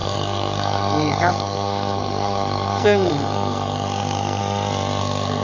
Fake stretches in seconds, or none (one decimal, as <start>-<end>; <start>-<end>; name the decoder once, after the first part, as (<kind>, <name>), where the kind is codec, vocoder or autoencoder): 0.0-4.4 (codec, SNAC); 5.0-5.4